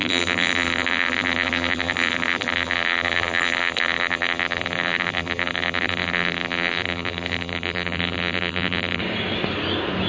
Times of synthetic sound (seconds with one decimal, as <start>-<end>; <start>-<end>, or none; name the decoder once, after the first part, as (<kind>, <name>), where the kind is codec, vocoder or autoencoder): 0.0-9.0 (vocoder, BigVGAN v2)